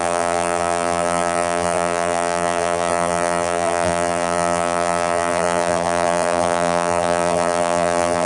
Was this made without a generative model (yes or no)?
no